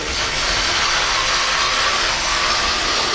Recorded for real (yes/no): yes